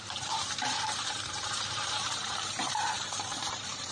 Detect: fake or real fake